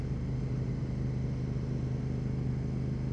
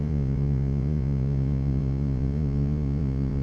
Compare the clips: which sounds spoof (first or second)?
second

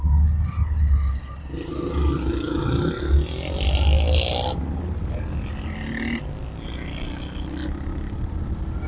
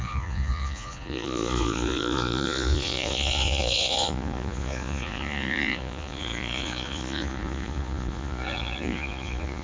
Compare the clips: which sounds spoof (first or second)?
second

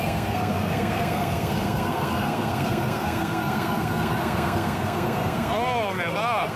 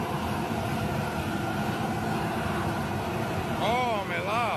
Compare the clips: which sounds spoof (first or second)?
first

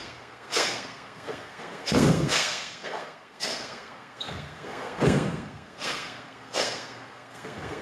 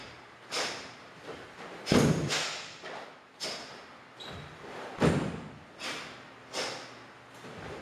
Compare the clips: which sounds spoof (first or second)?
first